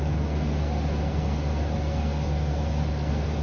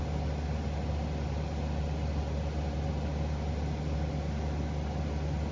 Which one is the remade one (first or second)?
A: first